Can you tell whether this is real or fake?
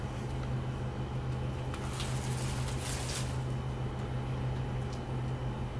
real